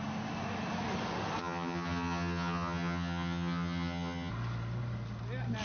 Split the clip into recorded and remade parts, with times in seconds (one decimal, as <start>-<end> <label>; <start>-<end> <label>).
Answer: 0.0-1.4 recorded; 1.4-4.3 remade; 4.3-5.6 recorded